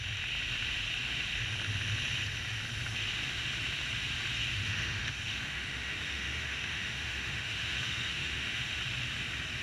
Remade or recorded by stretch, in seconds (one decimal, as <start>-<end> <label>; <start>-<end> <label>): 0.0-4.5 recorded; 4.5-8.8 remade; 8.8-9.6 recorded